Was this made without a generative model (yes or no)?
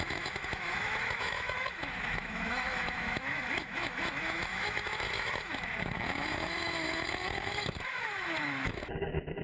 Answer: no